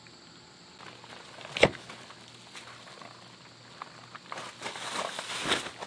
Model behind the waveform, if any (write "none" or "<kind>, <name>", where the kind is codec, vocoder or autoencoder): none